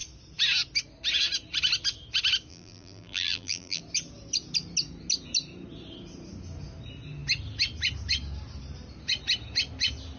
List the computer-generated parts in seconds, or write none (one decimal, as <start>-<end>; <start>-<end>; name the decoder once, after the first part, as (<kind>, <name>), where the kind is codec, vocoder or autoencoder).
2.5-3.8 (vocoder, BigVGAN v2)